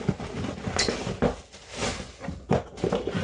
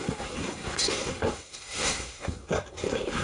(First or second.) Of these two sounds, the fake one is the second